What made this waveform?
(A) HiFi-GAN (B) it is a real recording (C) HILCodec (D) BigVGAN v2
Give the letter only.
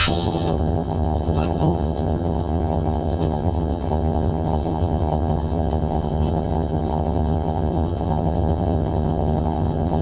A